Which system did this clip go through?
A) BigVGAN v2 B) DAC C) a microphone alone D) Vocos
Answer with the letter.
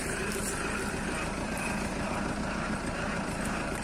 A